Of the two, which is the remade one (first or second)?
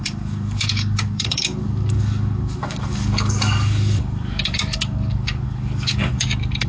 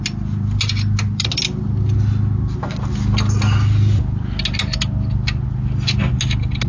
first